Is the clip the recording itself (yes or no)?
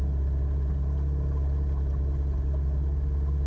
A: yes